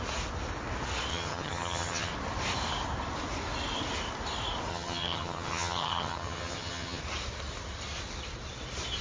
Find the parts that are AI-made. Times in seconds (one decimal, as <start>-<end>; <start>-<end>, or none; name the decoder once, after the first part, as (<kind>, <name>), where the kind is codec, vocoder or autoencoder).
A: 1.1-2.1 (vocoder, HiFi-GAN); 4.7-7.0